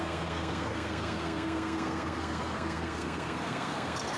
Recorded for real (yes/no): no